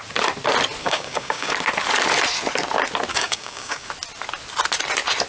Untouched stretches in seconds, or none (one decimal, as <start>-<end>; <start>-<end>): 0.0-0.8; 1.5-3.1; 3.9-5.3